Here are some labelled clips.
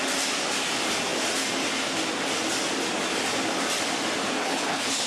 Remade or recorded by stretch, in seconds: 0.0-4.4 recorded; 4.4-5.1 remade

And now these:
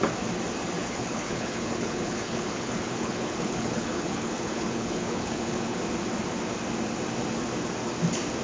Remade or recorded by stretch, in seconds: 0.0-0.8 recorded; 0.8-5.8 remade; 5.8-8.4 recorded

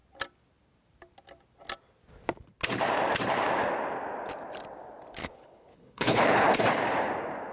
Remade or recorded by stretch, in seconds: 0.0-5.2 recorded; 5.2-6.6 remade; 6.6-7.5 recorded